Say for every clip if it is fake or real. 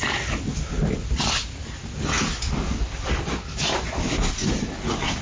real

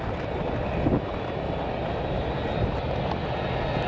real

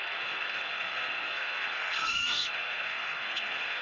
fake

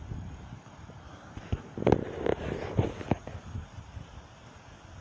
real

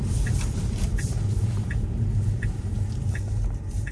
fake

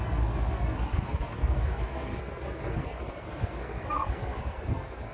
fake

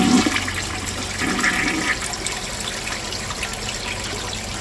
real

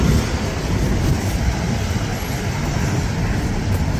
real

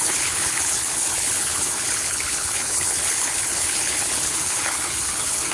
fake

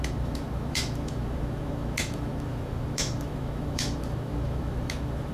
fake